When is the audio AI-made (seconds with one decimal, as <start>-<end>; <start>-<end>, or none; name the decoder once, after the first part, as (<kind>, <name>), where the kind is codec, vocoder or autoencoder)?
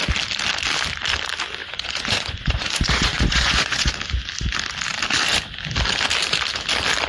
1.6-3.9 (vocoder, Vocos)